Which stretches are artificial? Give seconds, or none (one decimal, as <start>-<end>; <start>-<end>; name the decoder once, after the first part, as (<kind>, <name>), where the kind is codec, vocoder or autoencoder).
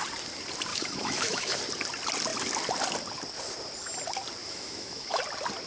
0.7-1.6 (autoencoder, DAC-VAE); 4.4-5.2